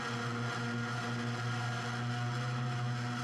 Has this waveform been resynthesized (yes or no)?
no